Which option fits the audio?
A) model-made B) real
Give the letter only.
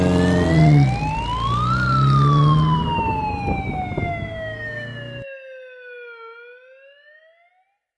B